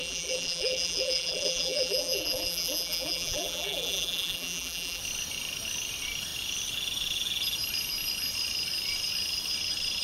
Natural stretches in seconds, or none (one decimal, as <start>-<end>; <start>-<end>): 5.0-10.0